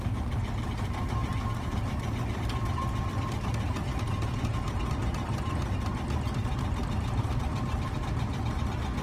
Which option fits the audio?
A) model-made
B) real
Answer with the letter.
B